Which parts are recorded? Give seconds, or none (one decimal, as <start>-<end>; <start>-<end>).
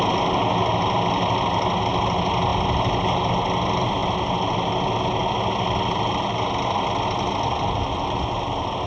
0.0-8.9